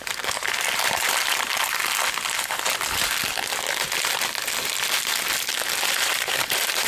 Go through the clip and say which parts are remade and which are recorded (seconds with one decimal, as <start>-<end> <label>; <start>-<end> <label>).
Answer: 0.0-1.8 remade; 1.8-5.9 recorded; 5.9-6.9 remade